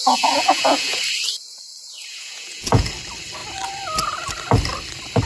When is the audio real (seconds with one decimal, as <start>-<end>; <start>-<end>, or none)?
1.0-2.1; 2.9-5.3